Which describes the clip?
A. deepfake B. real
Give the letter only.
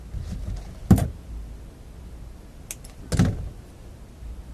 B